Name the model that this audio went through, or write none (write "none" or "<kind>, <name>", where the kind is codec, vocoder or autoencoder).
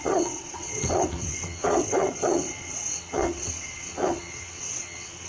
vocoder, WaveNeXt